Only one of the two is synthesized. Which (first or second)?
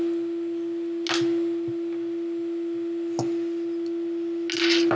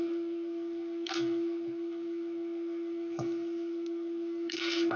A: second